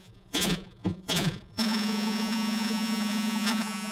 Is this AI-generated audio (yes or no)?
yes